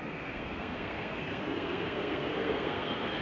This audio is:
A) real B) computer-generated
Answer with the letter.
B